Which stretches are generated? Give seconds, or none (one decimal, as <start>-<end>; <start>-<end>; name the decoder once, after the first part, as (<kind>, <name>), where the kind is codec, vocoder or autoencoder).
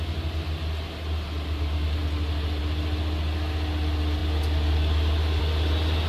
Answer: none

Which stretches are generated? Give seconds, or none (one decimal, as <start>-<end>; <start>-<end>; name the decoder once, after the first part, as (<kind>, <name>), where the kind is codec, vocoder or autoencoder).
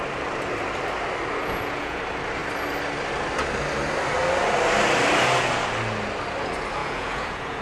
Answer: 1.4-2.0 (vocoder, Vocos); 6.8-7.6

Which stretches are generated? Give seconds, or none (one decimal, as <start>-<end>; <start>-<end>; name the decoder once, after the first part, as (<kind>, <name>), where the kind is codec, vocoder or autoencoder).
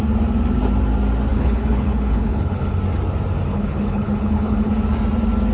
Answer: 1.3-2.8 (codec, HILCodec); 3.5-4.7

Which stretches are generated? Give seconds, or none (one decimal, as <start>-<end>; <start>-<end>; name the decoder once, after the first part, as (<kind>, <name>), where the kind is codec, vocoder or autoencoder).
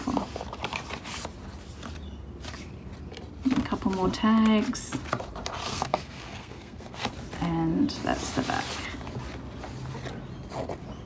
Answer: 5.7-7.1 (codec, SNAC)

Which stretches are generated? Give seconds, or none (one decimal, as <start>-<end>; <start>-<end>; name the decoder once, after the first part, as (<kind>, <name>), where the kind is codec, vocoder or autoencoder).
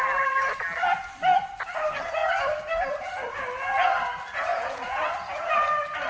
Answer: 4.5-5.1 (vocoder, Vocos)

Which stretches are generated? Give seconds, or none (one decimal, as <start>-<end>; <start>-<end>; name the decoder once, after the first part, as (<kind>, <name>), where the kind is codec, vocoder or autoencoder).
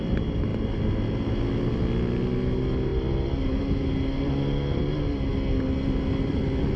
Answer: none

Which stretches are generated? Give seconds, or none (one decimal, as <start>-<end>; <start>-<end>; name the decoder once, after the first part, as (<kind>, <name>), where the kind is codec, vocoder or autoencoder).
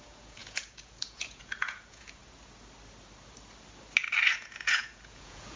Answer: 0.0-2.2 (vocoder, Vocos); 4.3-5.6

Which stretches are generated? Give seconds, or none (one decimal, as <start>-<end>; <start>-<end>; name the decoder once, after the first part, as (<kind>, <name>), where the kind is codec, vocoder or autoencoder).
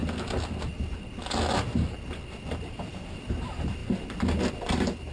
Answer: 3.1-3.8 (vocoder, BigVGAN v2); 4.5-5.1